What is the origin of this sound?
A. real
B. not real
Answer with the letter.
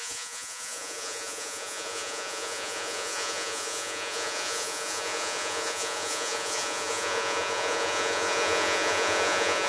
B